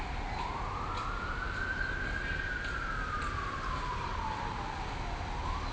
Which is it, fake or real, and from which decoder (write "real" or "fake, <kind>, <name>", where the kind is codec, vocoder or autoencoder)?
real